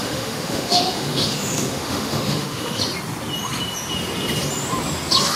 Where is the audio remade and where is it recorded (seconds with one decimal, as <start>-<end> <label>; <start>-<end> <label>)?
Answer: 0.0-2.8 remade; 2.8-5.4 recorded